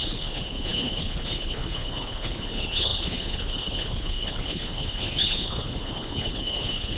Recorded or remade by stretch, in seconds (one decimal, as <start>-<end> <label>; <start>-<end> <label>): 0.0-7.0 remade